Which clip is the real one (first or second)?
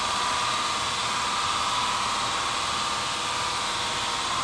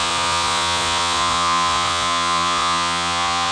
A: first